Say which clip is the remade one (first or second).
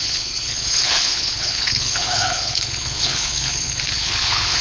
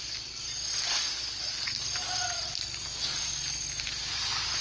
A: first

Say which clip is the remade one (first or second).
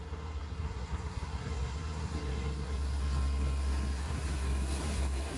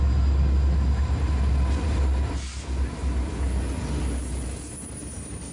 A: first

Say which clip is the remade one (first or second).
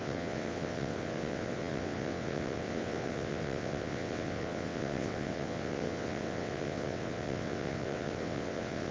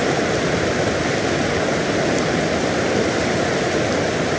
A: first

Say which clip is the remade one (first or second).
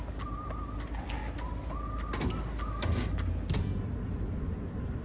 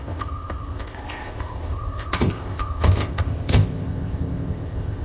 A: second